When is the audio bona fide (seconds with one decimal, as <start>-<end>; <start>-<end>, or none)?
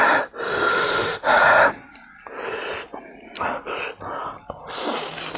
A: 0.0-0.7; 1.4-5.4